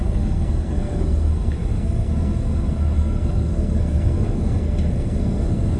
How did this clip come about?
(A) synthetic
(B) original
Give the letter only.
A